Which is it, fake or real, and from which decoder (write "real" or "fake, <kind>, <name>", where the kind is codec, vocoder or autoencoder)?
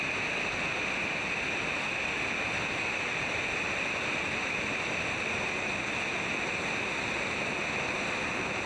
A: real